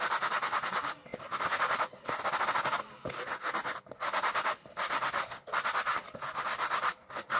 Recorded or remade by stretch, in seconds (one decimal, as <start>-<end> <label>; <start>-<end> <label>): 0.0-7.4 recorded